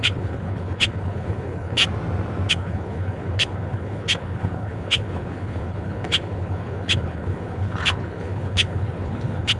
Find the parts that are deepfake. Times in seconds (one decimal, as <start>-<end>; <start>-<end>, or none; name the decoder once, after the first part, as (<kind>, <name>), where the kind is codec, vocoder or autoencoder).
0.0-1.8 (codec, HILCodec); 2.5-9.6